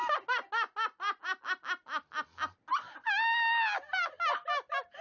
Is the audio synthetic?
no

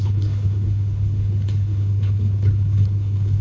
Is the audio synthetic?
yes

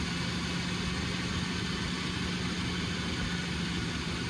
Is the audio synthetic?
no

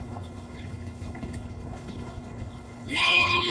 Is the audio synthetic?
yes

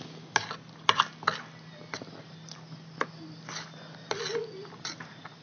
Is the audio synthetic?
no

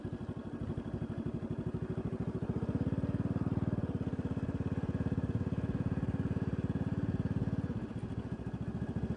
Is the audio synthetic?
no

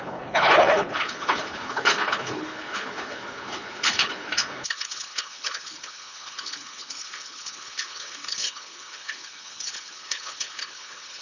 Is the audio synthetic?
yes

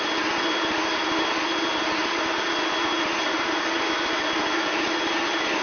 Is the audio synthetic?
no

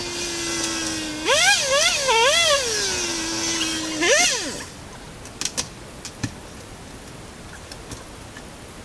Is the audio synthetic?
no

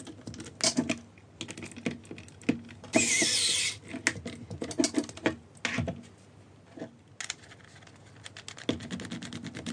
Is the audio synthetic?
no